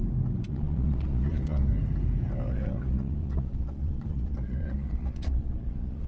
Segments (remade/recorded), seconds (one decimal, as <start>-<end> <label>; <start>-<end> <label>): 0.0-0.5 recorded; 0.5-1.7 remade; 1.7-2.5 recorded; 2.5-6.1 remade